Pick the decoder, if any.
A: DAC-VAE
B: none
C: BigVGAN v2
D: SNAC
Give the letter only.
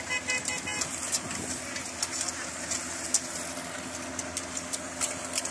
B